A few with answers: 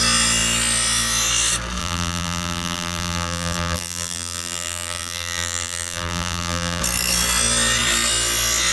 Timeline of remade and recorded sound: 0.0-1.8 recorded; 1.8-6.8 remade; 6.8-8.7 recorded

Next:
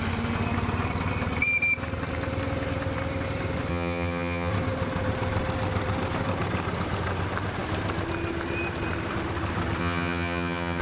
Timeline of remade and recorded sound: 0.0-3.7 recorded; 3.7-4.5 remade; 4.5-9.8 recorded; 9.8-10.8 remade

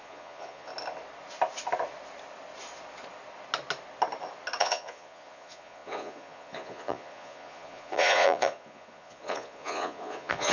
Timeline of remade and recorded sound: 0.0-0.7 remade; 0.7-4.6 recorded; 4.6-10.5 remade

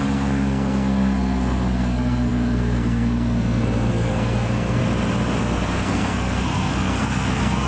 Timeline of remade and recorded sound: 0.0-4.8 remade; 4.8-5.4 recorded; 5.4-7.7 remade

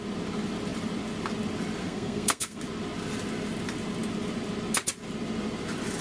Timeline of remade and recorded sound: 0.0-1.8 recorded; 1.8-2.6 remade; 2.6-6.0 recorded

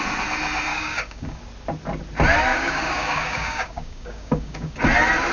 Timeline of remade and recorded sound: 0.0-0.7 recorded; 0.7-1.4 remade; 1.4-2.5 recorded; 2.5-4.7 remade; 4.7-5.3 recorded

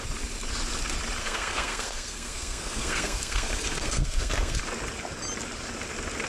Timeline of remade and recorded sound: 0.0-1.2 recorded; 1.2-4.6 remade; 4.6-6.3 recorded